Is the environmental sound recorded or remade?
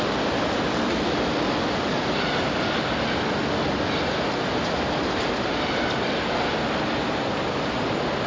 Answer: recorded